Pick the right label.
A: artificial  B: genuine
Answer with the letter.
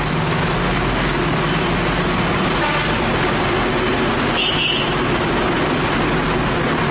B